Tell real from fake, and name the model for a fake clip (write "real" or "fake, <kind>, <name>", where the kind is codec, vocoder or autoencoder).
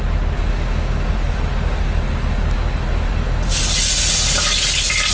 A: real